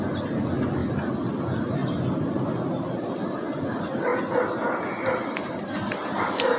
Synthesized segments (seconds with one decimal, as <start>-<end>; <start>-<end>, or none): 0.0-0.8; 1.4-1.8; 3.5-4.1; 5.1-6.6